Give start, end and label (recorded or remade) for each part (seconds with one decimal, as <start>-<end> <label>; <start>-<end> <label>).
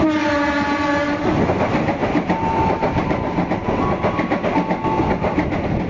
0.0-5.9 recorded